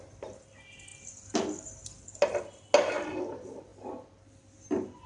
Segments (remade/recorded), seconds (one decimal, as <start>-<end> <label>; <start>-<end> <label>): 0.0-0.9 recorded; 0.9-1.8 remade; 1.8-3.7 recorded; 3.7-4.4 remade; 4.4-5.1 recorded